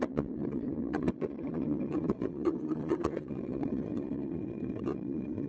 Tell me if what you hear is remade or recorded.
remade